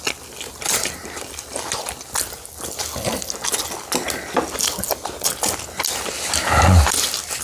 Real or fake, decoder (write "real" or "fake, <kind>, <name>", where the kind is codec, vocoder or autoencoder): real